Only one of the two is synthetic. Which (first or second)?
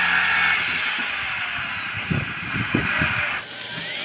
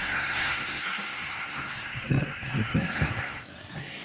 second